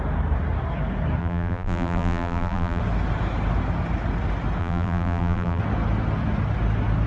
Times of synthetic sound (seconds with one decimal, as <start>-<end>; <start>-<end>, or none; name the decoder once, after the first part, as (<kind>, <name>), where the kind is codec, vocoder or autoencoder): 1.2-2.8 (vocoder, BigVGAN v2); 4.6-5.6